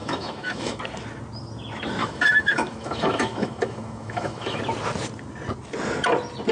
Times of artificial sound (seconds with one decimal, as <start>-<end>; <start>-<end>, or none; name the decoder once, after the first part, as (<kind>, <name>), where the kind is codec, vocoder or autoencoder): 0.0-0.8 (autoencoder, DAC-VAE); 2.0-4.6